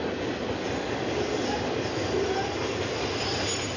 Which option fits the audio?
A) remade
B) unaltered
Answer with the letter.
B